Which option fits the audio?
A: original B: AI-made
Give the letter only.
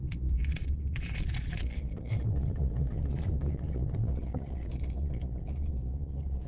B